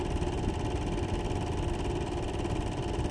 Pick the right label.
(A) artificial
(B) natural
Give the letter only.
B